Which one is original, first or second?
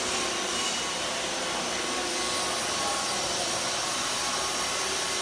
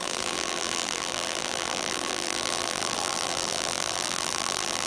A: first